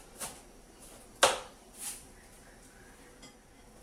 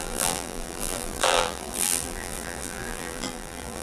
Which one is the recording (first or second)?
first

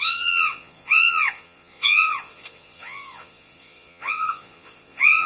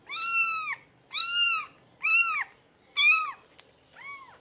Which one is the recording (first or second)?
second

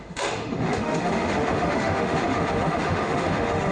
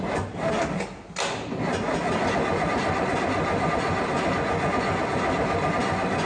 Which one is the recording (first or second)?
second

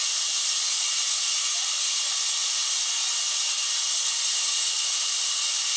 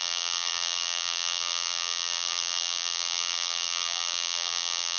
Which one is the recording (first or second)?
first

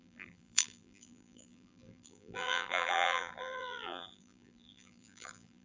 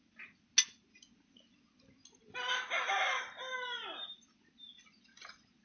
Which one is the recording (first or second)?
second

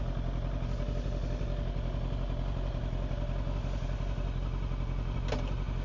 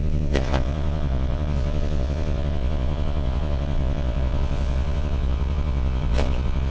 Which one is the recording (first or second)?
first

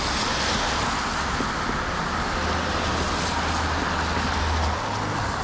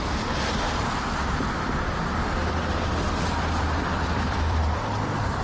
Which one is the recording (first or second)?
first